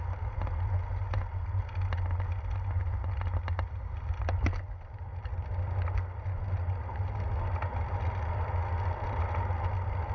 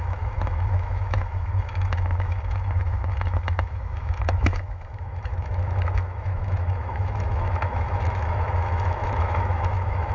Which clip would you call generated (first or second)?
second